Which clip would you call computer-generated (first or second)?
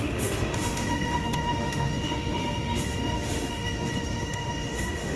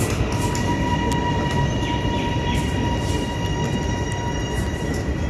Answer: first